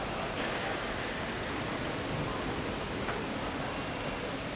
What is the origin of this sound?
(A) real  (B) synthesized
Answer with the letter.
A